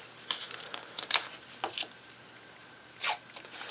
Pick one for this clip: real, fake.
real